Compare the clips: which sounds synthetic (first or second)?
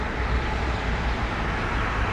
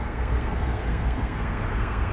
second